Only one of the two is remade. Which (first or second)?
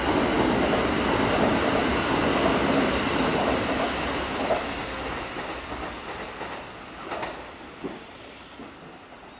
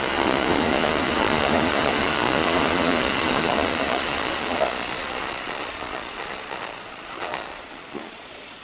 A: second